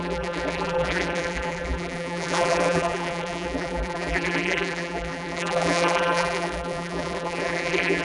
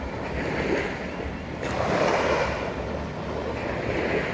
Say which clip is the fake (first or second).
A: first